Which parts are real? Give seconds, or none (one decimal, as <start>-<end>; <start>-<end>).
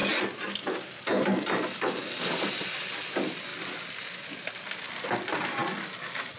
2.0-3.5; 4.5-6.4